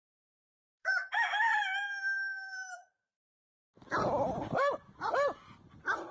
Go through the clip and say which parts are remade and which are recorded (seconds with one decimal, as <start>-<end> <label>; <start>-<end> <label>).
0.0-3.7 remade; 3.7-6.1 recorded